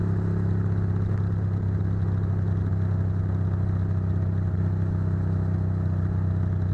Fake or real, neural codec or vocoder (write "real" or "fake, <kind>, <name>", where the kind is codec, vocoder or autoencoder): real